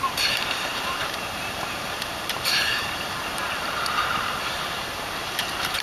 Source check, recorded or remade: remade